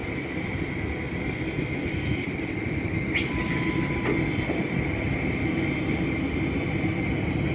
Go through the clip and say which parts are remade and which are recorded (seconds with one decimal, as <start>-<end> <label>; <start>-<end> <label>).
0.0-0.7 remade; 0.7-7.5 recorded